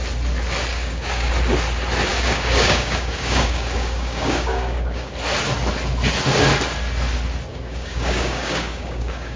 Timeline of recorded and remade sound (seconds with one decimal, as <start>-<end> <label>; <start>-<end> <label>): 0.0-0.7 recorded; 0.7-1.3 remade; 1.3-2.1 recorded; 2.1-5.1 remade; 5.1-7.5 recorded; 7.5-9.4 remade

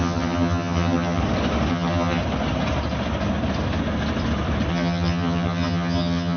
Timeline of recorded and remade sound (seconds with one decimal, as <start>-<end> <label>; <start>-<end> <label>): 0.0-1.2 remade; 1.2-1.7 recorded; 1.7-2.2 remade; 2.2-4.7 recorded; 4.7-6.4 remade

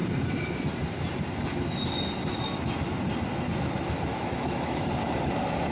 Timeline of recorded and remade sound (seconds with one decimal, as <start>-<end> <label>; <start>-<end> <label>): 0.0-4.1 recorded; 4.1-4.9 remade; 4.9-5.7 recorded

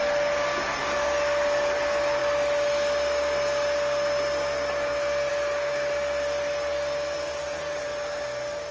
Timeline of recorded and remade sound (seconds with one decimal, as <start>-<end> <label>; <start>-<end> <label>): 0.0-8.7 recorded

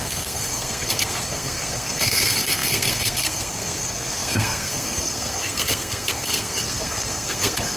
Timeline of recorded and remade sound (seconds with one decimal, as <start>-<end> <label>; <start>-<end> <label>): 0.0-7.8 remade

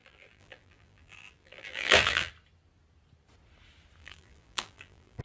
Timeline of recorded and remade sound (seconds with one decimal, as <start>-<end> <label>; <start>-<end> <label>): 0.0-2.3 remade; 2.3-4.0 recorded; 4.0-5.2 remade

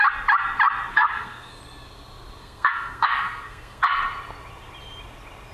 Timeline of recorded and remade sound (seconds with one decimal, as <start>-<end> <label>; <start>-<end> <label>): 0.0-0.9 recorded; 0.9-1.6 remade; 1.6-2.4 recorded; 2.4-3.8 remade; 3.8-5.5 recorded

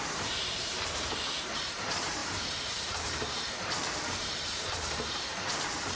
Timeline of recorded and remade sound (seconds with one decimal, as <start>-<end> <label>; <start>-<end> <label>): 0.0-6.0 remade